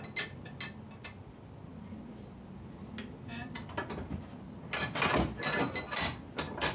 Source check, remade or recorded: recorded